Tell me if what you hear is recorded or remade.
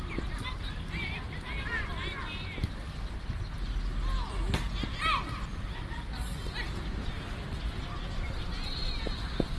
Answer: recorded